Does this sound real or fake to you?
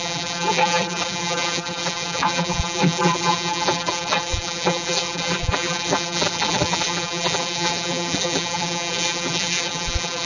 fake